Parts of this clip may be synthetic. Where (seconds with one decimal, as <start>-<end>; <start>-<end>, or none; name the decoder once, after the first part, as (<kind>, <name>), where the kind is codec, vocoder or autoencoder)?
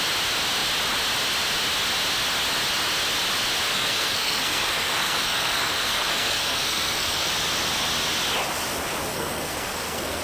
3.7-7.3 (codec, SNAC); 9.1-10.2